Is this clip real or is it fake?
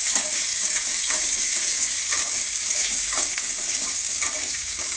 fake